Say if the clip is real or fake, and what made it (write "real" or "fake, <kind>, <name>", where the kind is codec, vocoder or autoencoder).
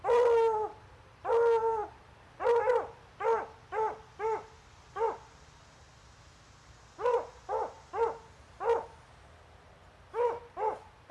real